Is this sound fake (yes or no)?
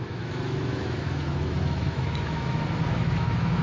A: yes